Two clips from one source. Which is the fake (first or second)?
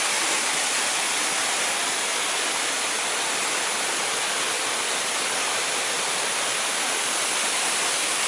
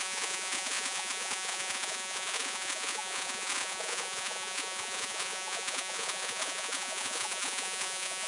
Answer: second